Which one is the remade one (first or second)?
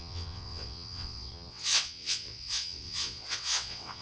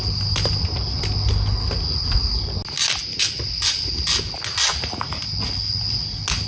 first